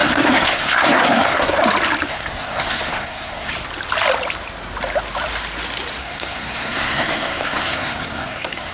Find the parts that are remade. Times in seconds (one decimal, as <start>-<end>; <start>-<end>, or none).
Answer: 0.0-1.6; 2.1-3.5; 6.0-8.7